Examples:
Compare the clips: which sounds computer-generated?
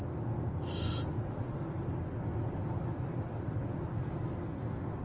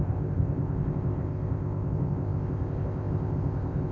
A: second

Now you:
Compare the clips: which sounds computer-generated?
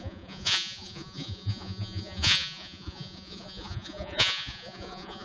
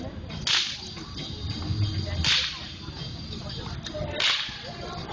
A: first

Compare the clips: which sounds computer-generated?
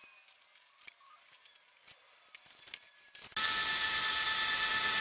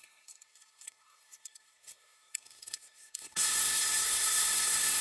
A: second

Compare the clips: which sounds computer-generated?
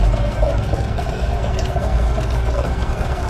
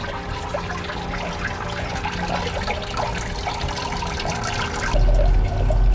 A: first